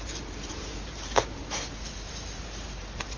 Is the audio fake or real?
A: fake